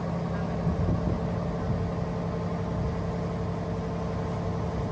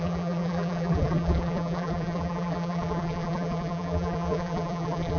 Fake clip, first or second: second